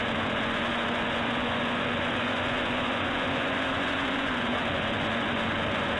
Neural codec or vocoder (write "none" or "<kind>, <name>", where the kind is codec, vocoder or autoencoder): vocoder, Vocos